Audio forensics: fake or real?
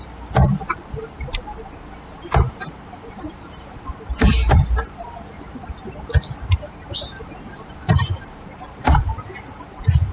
fake